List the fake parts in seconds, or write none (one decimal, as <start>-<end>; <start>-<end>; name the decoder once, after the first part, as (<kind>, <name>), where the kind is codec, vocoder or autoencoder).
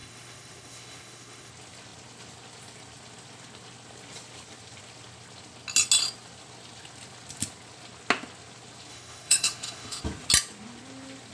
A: 0.0-1.5 (autoencoder, DAC-VAE); 8.9-10.0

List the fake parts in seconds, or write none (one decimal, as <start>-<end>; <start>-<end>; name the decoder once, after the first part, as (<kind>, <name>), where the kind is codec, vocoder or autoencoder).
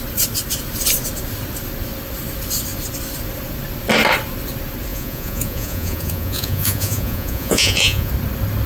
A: 4.9-8.1 (vocoder, Vocos)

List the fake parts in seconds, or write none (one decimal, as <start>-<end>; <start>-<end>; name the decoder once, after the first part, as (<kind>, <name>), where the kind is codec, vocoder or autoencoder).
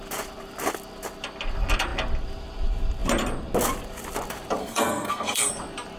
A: 4.6-5.5 (codec, SNAC)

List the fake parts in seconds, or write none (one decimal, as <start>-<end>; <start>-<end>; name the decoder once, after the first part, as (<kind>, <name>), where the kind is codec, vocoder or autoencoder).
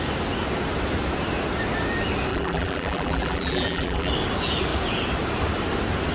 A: 2.3-4.1 (vocoder, BigVGAN v2)